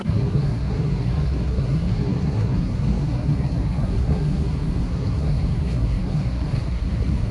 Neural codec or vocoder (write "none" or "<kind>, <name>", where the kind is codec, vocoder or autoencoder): codec, SNAC